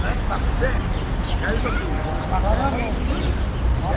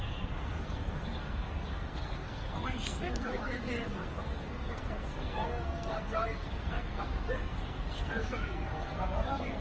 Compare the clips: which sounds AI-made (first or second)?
second